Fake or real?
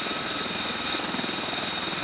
real